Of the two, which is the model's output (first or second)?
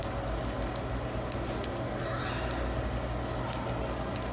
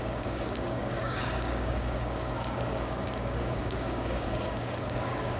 second